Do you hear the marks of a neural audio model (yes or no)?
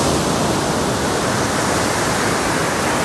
no